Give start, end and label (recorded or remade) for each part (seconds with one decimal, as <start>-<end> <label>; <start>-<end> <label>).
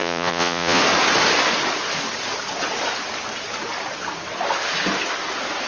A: 0.0-0.8 remade; 0.8-5.7 recorded